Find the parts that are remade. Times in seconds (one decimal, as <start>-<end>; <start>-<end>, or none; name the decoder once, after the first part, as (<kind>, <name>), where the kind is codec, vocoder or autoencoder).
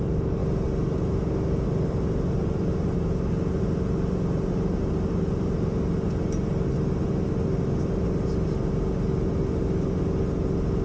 none